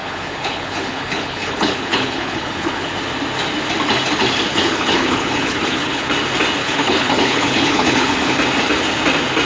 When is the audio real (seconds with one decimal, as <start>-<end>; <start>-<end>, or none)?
2.9-4.5; 6.1-6.6; 8.1-9.5